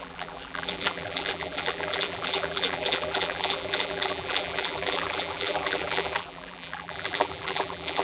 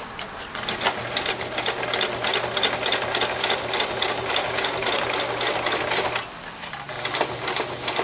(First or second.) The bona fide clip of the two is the second